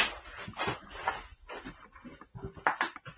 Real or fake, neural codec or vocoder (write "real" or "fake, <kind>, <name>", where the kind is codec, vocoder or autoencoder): real